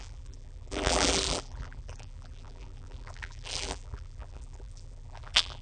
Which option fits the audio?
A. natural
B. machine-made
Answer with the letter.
B